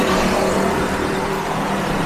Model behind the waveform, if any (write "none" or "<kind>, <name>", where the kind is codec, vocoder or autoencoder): vocoder, BigVGAN v2